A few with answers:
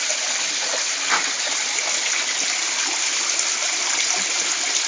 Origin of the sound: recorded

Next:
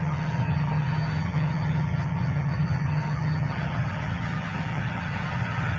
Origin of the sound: remade